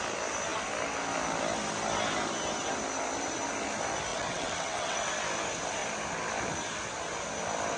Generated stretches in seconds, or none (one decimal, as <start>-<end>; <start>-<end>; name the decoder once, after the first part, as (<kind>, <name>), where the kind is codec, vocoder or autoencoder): 4.1-5.1 (vocoder, WaveNeXt)